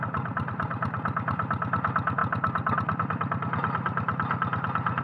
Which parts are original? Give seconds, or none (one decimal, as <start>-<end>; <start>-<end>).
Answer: 0.0-5.0